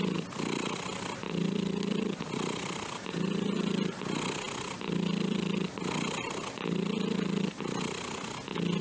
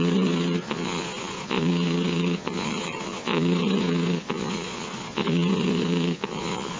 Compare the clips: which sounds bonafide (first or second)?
first